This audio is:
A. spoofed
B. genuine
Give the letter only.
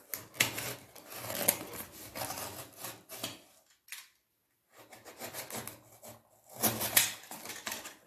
B